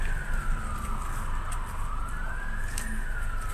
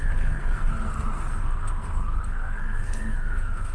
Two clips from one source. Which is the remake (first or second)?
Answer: second